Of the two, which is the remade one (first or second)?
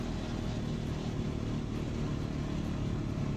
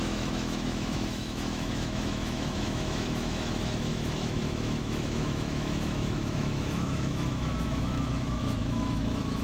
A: second